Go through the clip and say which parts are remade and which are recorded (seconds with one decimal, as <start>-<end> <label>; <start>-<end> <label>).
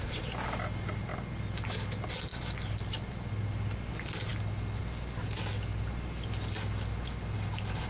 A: 0.0-7.9 recorded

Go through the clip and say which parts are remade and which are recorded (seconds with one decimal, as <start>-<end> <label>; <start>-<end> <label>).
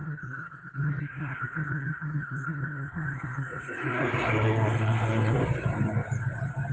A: 0.0-5.4 remade; 5.4-6.7 recorded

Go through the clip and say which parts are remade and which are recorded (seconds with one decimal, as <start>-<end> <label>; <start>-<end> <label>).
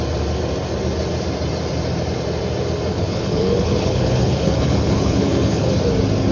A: 0.0-2.9 recorded; 2.9-5.7 remade; 5.7-6.3 recorded